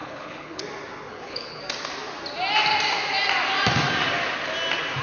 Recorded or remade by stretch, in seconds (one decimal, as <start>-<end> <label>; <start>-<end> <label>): 0.0-0.6 remade; 0.6-1.1 recorded; 1.1-1.6 remade; 1.6-5.0 recorded

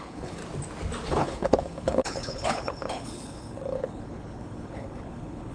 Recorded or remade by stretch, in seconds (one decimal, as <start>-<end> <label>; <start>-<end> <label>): 0.0-0.4 remade; 0.4-1.1 recorded; 1.1-5.5 remade

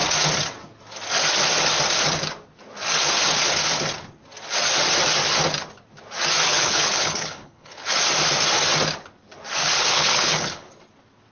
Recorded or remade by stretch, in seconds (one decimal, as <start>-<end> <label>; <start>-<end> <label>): 0.0-6.5 recorded; 6.5-7.9 remade; 7.9-9.6 recorded; 9.6-10.7 remade; 10.7-11.3 recorded